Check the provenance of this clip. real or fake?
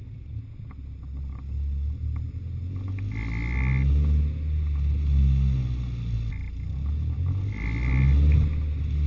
real